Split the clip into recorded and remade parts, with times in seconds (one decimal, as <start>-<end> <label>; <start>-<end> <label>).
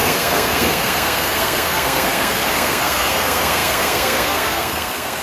0.0-5.2 remade